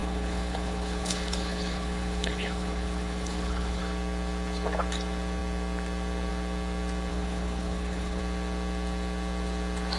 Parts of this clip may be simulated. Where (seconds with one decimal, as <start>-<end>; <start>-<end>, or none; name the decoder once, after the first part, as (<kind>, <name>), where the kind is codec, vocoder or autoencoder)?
0.0-3.8 (codec, HILCodec); 7.1-8.2